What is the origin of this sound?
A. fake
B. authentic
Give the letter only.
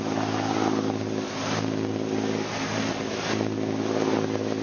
B